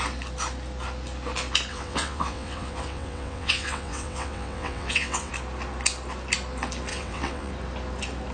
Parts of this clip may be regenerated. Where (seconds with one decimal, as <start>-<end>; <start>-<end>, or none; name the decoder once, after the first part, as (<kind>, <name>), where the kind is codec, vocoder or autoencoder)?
1.7-5.3 (vocoder, WaveNeXt); 6.9-7.5